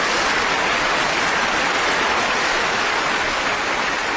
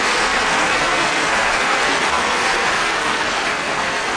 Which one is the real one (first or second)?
first